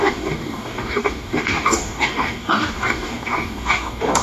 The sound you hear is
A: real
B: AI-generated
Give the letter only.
B